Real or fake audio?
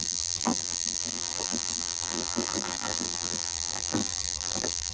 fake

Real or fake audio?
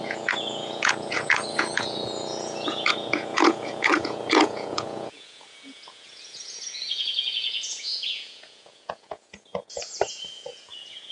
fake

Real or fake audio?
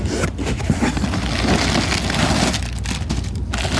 real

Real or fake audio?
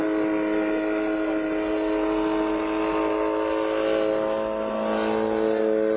real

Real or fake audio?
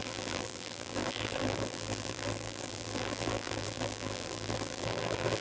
fake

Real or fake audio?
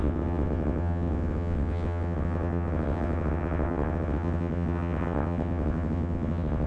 fake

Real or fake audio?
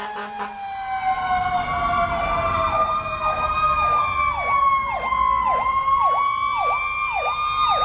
real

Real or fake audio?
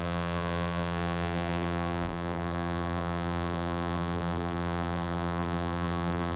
fake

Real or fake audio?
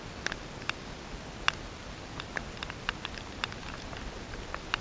real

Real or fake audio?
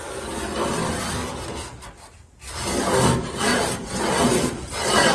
real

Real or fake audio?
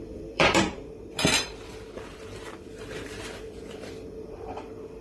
fake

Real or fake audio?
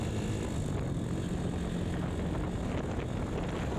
real